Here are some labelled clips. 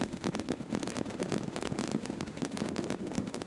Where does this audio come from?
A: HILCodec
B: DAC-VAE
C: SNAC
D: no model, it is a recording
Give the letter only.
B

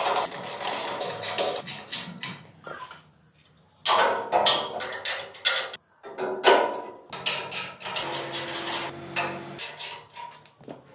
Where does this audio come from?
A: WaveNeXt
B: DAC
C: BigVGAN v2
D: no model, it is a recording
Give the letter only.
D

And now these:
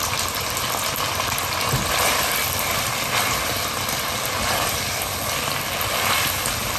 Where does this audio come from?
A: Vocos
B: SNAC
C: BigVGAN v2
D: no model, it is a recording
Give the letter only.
D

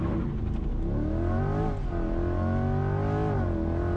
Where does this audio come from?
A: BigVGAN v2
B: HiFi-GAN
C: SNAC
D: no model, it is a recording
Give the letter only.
D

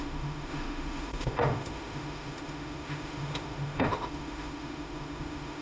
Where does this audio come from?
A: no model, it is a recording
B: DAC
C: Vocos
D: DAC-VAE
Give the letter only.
D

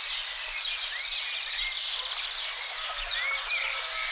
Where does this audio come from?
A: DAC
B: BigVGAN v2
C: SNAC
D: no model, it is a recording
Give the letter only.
B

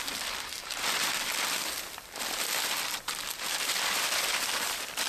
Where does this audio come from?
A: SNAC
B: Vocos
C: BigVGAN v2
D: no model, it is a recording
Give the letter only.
C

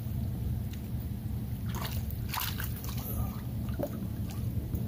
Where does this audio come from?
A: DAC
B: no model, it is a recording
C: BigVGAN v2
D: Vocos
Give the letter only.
B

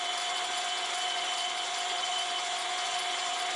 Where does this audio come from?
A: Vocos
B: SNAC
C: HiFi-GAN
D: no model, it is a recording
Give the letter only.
A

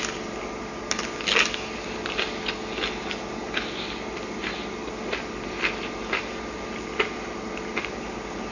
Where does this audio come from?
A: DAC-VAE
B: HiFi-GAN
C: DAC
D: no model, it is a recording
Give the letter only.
D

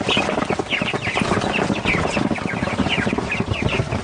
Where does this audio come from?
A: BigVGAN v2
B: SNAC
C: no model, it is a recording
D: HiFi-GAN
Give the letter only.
C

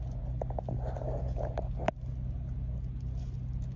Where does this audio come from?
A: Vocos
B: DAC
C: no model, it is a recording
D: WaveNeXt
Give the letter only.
C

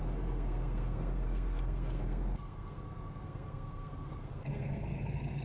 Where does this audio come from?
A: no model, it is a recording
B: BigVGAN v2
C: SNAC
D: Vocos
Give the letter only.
C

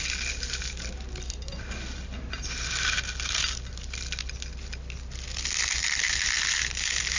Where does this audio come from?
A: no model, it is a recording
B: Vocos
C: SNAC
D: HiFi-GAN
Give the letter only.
A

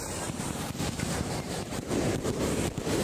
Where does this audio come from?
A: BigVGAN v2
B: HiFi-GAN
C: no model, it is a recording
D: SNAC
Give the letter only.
A